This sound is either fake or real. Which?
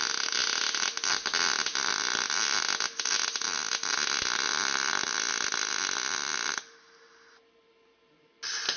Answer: real